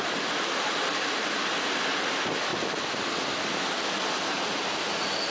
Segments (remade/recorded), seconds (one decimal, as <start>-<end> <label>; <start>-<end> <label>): 0.0-5.3 recorded